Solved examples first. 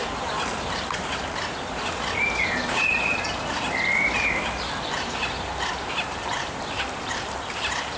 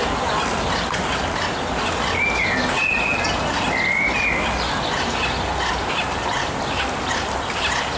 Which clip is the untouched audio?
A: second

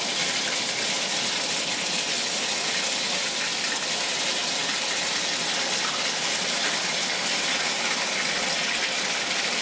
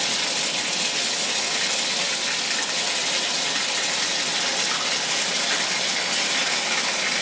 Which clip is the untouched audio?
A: second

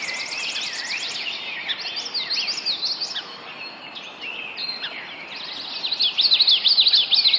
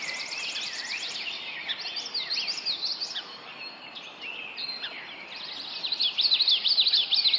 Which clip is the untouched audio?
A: first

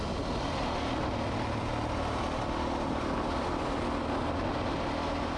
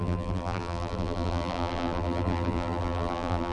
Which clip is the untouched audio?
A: first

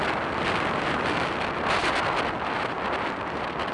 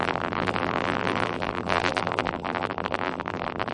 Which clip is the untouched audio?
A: first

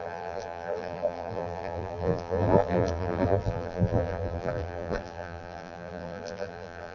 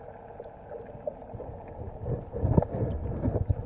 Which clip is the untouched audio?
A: second